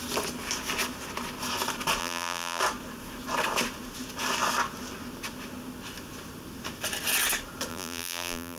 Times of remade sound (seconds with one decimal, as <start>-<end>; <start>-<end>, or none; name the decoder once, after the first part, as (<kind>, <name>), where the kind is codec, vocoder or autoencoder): 2.0-2.6 (vocoder, BigVGAN v2); 7.7-8.6